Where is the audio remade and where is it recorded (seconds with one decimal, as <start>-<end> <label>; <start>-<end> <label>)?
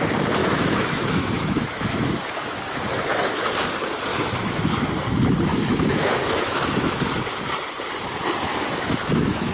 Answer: 0.0-0.4 recorded; 0.4-3.4 remade; 3.4-4.1 recorded; 4.1-4.9 remade; 4.9-5.5 recorded; 5.5-7.0 remade; 7.0-8.5 recorded; 8.5-9.5 remade